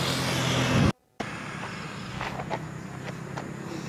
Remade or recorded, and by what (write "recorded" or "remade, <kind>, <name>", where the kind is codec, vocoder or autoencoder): recorded